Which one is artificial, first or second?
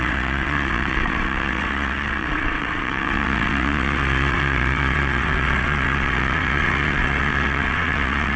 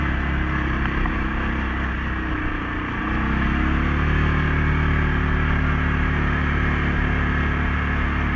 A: first